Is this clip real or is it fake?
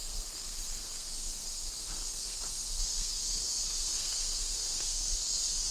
fake